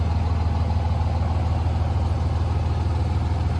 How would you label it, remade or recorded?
recorded